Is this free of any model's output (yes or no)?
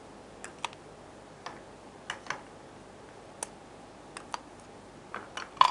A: yes